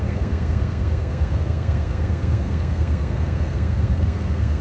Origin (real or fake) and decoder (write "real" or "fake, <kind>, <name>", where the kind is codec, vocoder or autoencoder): fake, codec, SNAC